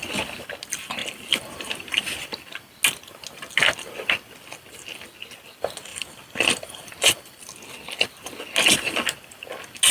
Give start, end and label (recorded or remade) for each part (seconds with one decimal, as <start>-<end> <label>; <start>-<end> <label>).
0.0-1.0 recorded; 1.0-2.0 remade; 2.0-5.9 recorded; 5.9-7.4 remade; 7.4-9.9 recorded